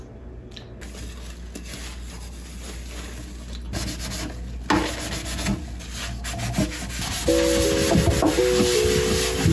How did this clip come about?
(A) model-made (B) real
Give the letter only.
B